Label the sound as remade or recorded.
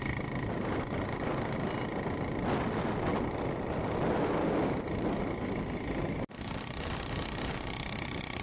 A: recorded